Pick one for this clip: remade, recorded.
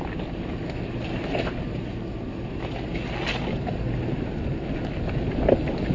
recorded